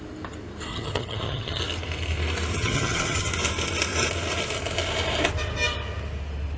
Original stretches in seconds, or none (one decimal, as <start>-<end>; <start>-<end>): 0.0-0.7; 1.6-2.5; 3.3-6.6